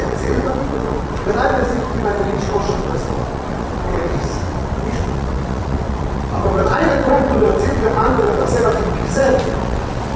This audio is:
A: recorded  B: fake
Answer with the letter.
B